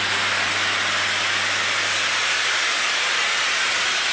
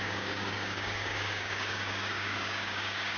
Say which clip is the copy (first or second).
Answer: second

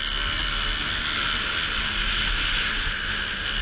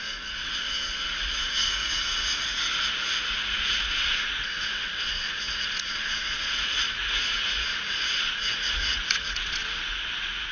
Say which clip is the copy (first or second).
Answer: second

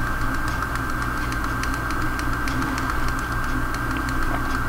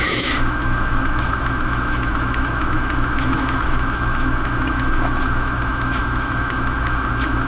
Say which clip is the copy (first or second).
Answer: second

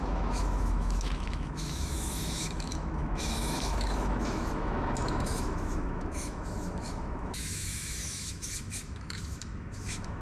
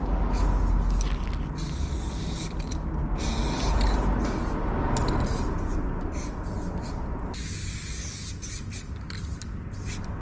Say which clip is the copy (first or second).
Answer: first